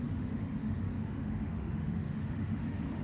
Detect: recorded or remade remade